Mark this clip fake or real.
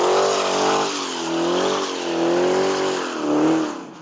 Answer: real